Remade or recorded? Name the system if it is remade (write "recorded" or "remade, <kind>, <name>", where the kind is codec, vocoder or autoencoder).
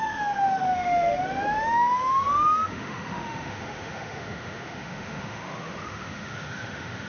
remade, autoencoder, DAC-VAE